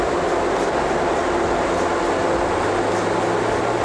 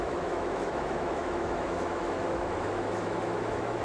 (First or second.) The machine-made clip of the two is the second